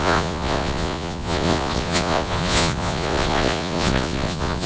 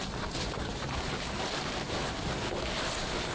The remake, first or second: first